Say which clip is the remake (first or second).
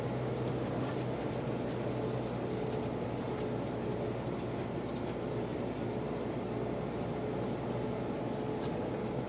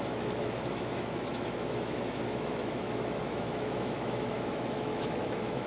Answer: second